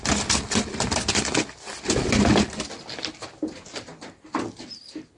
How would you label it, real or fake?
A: real